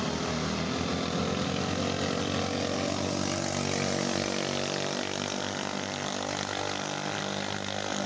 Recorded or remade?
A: recorded